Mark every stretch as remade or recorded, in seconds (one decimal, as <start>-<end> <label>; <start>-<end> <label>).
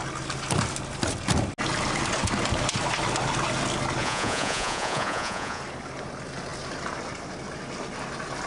0.0-4.0 recorded; 4.0-5.6 remade; 5.6-8.5 recorded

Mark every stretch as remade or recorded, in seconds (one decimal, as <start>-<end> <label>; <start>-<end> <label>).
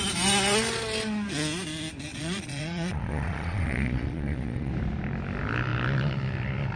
0.0-2.1 recorded; 2.1-4.7 remade; 4.7-6.8 recorded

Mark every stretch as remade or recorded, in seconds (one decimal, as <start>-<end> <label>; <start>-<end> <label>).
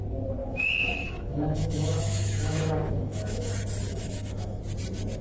0.0-0.4 recorded; 0.4-3.5 remade; 3.5-3.9 recorded; 3.9-4.6 remade; 4.6-5.2 recorded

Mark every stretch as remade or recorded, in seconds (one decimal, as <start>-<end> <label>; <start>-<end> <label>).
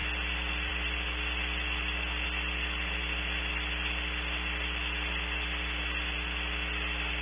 0.0-7.2 recorded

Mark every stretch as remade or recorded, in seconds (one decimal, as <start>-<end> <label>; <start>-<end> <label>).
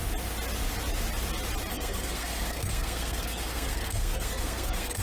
0.0-1.7 recorded; 1.7-5.0 remade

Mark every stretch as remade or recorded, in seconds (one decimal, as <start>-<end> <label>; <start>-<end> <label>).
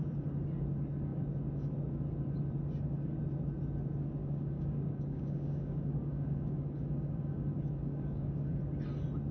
0.0-4.2 recorded; 4.2-8.6 remade; 8.6-9.3 recorded